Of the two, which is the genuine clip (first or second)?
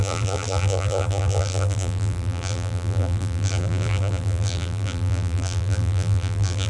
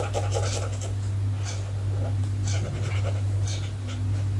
second